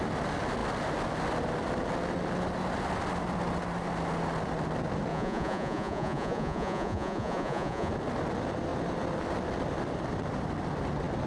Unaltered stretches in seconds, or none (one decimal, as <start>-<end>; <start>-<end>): 0.0-5.1; 7.9-11.3